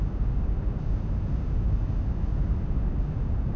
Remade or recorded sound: recorded